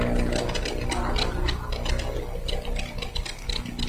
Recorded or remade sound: recorded